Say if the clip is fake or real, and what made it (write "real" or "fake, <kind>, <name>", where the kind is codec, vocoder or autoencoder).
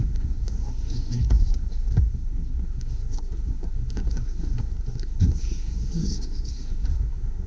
fake, codec, SNAC